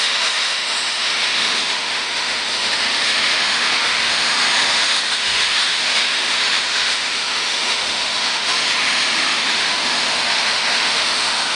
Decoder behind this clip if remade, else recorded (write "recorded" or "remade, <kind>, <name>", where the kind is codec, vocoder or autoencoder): remade, autoencoder, DAC-VAE